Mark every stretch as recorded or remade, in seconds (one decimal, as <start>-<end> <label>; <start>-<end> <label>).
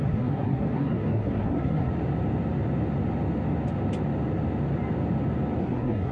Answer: 0.0-1.9 remade; 1.9-5.6 recorded; 5.6-6.1 remade